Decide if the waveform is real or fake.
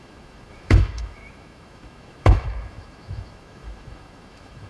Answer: fake